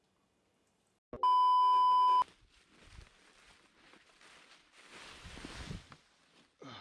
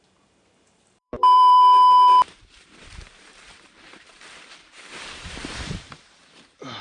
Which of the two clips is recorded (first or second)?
first